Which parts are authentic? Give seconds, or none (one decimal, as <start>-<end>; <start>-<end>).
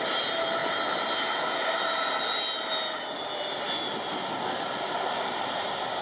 0.0-6.0